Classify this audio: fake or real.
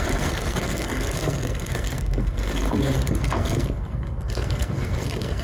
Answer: fake